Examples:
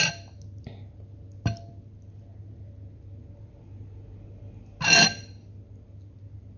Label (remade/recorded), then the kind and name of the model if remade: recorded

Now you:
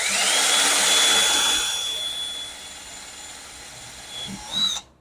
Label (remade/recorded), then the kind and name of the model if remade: recorded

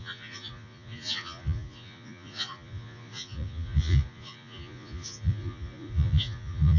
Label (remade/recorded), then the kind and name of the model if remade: remade, vocoder, Vocos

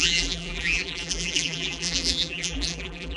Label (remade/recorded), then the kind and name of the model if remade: remade, vocoder, BigVGAN v2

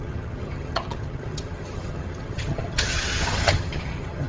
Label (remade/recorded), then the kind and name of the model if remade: remade, vocoder, HiFi-GAN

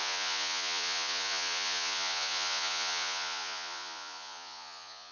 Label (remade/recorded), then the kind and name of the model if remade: remade, vocoder, Vocos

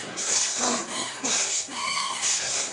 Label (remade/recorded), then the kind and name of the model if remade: remade, codec, SNAC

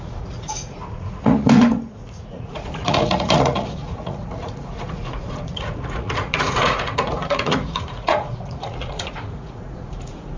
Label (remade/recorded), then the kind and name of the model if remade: remade, vocoder, Vocos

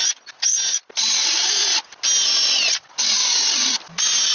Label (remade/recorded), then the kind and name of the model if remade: recorded